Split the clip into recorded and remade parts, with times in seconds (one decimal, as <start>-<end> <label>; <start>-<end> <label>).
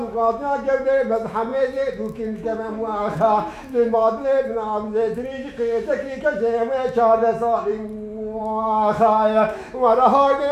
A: 0.0-7.7 remade; 7.7-8.4 recorded; 8.4-10.5 remade